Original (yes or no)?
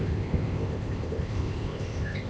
no